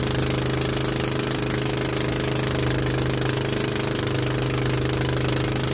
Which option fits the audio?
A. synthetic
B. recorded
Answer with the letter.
B